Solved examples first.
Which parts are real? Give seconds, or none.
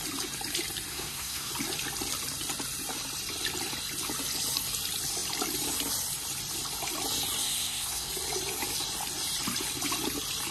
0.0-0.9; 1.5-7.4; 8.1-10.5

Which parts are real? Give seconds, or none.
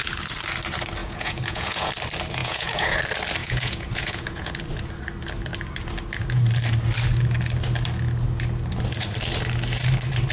0.0-1.0; 1.9-2.4; 3.0-3.4; 4.5-10.3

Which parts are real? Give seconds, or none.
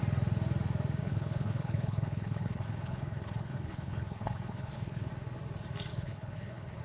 0.0-1.0; 5.1-5.9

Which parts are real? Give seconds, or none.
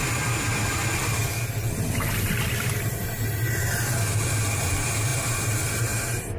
0.0-6.4